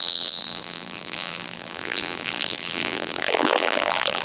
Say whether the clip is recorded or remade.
remade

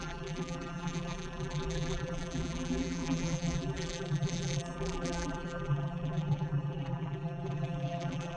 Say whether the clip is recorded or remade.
remade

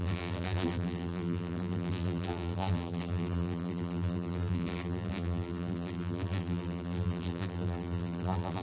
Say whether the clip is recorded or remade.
remade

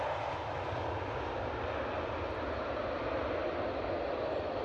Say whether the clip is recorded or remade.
recorded